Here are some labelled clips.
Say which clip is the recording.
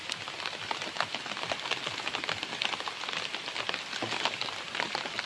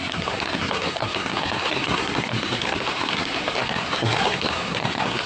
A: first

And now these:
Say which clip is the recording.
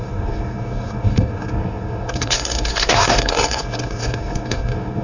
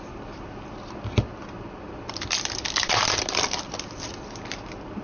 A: second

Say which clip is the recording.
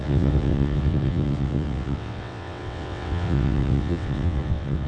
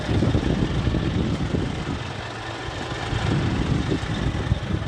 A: second